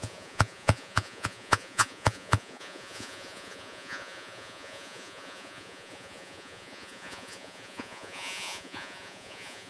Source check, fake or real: fake